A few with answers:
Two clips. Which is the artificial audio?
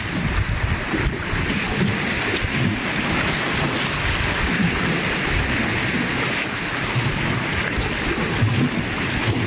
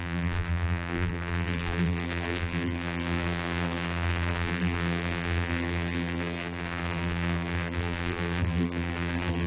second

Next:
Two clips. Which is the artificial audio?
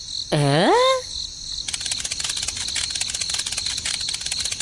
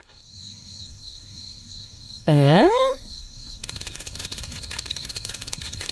second